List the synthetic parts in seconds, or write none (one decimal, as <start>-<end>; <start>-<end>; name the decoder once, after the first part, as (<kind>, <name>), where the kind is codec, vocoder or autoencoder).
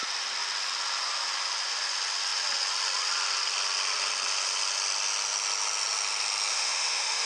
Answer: 6.5-7.3 (autoencoder, DAC-VAE)